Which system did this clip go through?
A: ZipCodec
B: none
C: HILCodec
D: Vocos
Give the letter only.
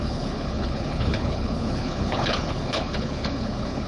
C